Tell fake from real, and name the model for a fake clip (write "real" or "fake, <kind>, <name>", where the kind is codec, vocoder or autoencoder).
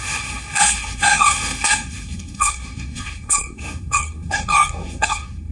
fake, codec, SNAC